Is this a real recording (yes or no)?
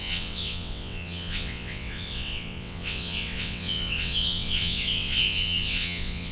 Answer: no